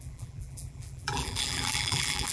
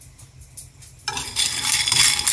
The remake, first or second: first